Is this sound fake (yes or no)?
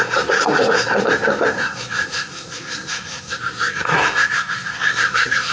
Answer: yes